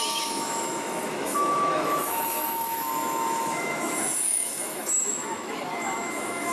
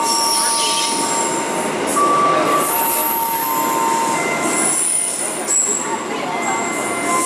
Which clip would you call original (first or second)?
second